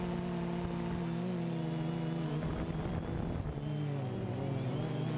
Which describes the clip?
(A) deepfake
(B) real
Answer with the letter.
B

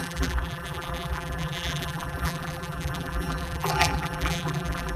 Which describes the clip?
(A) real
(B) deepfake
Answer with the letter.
B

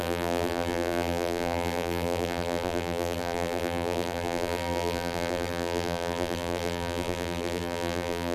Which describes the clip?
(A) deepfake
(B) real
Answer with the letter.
A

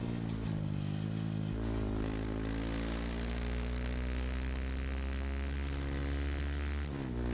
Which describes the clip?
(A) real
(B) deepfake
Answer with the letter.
A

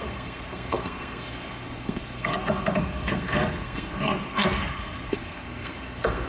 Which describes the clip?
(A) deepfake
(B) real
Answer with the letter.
A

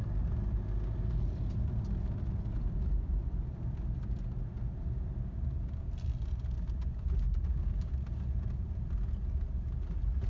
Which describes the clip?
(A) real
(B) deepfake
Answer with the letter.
A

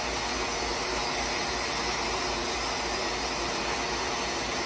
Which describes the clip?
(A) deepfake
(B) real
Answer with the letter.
B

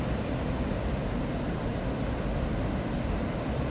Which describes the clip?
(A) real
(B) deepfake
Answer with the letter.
A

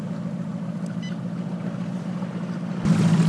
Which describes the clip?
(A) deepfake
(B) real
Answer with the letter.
B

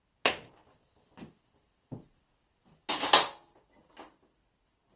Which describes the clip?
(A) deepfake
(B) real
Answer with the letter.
B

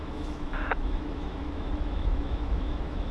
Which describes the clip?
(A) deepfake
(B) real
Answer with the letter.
A